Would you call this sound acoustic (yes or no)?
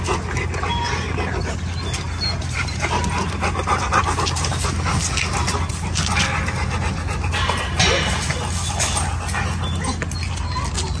yes